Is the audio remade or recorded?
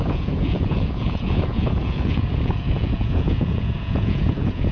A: remade